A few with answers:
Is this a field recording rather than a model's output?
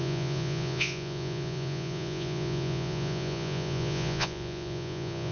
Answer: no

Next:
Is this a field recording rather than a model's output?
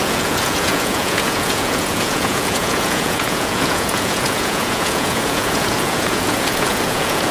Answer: no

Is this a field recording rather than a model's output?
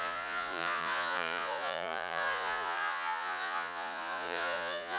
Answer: no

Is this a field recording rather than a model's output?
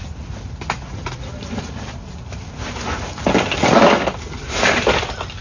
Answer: yes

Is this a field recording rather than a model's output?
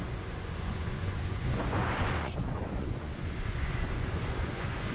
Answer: no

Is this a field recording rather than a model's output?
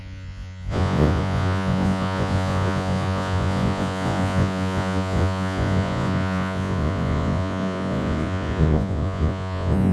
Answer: no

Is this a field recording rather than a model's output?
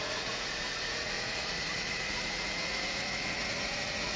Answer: no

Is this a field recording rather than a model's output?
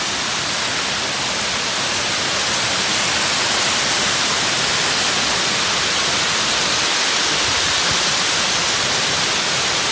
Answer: yes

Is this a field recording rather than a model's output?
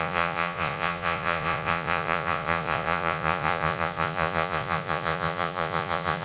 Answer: no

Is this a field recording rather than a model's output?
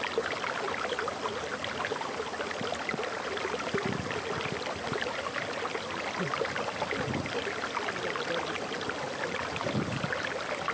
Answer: yes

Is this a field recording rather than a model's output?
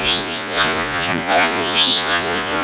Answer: no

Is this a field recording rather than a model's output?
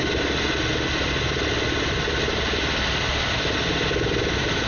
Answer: yes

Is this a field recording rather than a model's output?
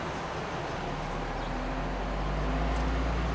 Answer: yes